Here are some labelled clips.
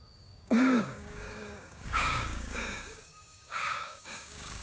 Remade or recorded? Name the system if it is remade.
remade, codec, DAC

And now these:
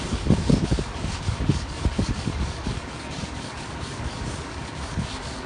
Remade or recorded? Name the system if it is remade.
remade, codec, DAC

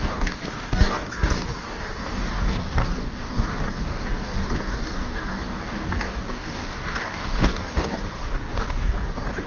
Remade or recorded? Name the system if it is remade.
remade, codec, DAC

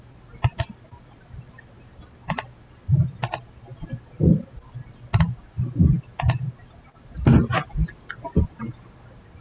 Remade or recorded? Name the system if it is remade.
recorded